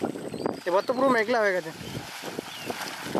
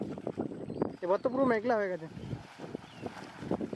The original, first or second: first